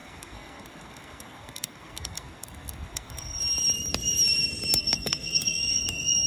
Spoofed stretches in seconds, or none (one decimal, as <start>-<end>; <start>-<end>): 0.0-3.4; 4.8-6.3

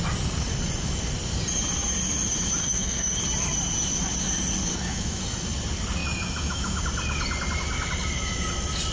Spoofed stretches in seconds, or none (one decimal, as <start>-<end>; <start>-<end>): 2.6-3.2; 4.7-5.2; 6.0-6.8

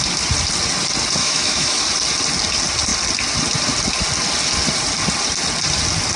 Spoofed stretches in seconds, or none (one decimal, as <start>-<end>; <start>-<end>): 1.2-1.8

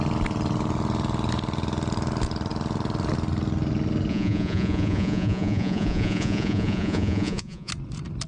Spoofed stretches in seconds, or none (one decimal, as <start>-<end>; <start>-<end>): 4.1-7.7

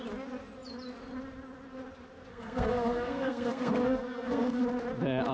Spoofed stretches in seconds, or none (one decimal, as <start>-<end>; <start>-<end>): 2.3-4.6

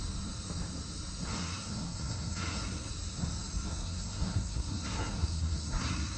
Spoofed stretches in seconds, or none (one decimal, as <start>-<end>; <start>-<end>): 1.3-2.9; 3.7-6.2

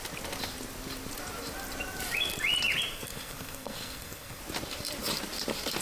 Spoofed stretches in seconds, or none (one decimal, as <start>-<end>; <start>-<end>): 2.9-4.4